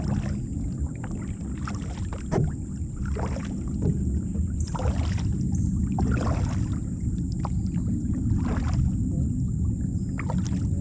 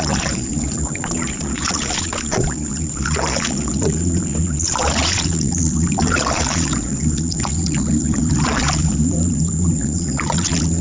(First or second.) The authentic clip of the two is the first